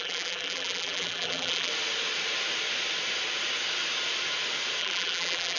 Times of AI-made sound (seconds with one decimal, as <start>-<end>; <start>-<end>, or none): 0.0-1.7; 4.8-5.6